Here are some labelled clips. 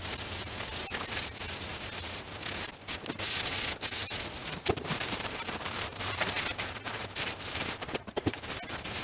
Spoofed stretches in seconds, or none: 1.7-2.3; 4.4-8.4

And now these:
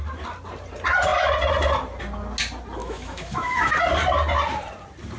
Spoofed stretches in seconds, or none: 2.8-3.8

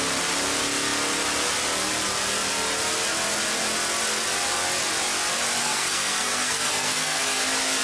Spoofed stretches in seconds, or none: 5.6-7.2

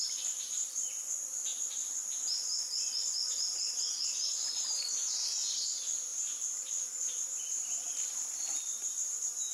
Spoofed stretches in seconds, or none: 3.2-3.9; 6.1-9.5

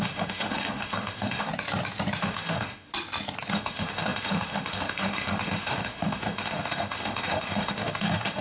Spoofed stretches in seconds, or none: 0.0-1.5; 2.2-2.9; 3.5-8.4

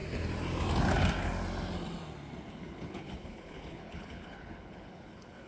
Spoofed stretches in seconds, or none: 2.5-5.5

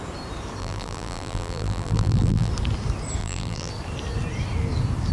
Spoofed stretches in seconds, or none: 0.6-2.5; 3.2-3.7